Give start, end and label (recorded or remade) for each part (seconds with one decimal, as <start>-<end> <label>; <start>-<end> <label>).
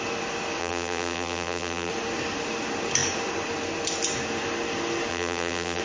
0.0-0.6 recorded; 0.6-1.9 remade; 1.9-5.1 recorded; 5.1-5.8 remade